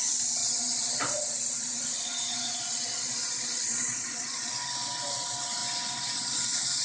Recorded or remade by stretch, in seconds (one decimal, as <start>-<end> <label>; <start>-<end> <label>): 0.0-0.4 recorded; 0.4-4.5 remade; 4.5-6.8 recorded